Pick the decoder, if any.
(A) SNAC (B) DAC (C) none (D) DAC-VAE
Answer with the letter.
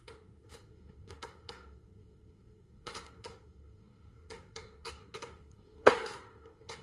A